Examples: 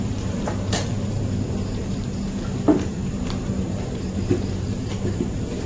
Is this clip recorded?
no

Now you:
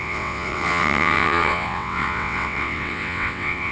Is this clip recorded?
no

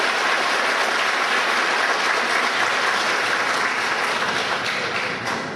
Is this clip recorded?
yes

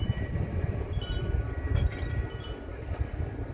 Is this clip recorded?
no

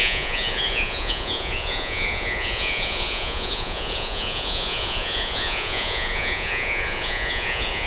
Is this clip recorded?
no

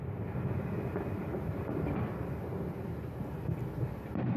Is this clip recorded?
yes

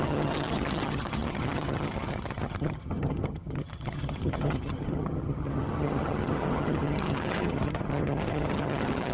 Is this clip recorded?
no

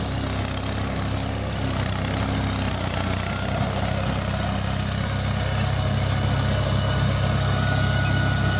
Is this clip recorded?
yes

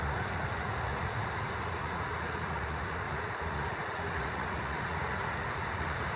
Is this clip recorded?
no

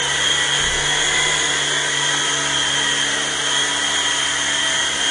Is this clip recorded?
yes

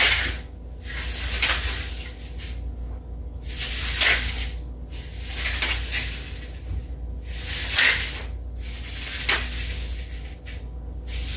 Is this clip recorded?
yes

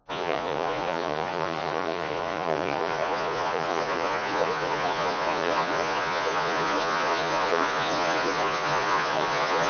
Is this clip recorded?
no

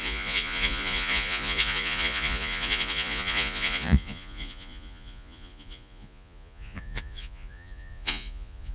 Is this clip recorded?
no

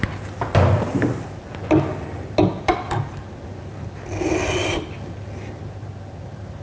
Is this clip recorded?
yes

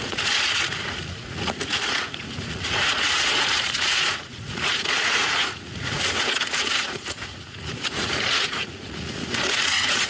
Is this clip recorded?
no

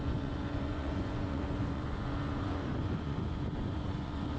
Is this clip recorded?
no